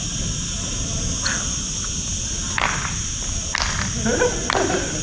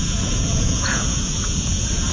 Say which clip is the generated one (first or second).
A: second